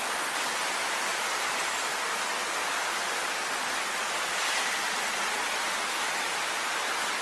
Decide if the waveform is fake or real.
real